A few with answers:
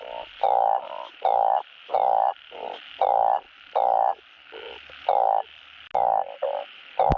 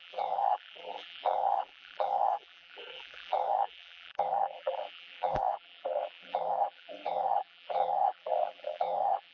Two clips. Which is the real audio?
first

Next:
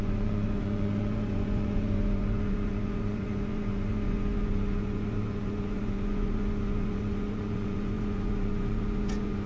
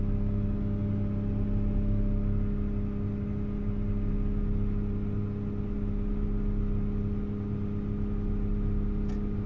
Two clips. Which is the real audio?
second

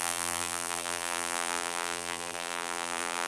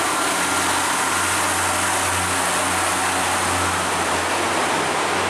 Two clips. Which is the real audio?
second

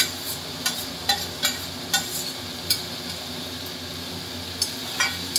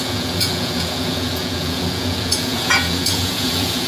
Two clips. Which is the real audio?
first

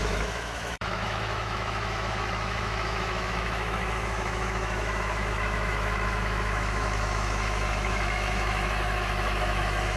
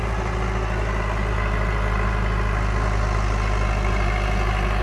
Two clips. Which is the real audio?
second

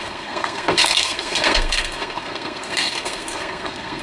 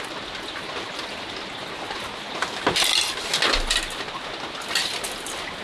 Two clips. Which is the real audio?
second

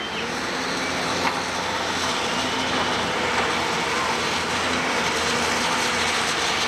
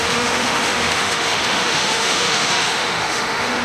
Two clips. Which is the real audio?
first